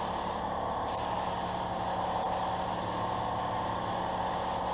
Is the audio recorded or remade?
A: recorded